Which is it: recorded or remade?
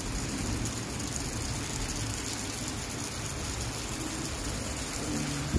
recorded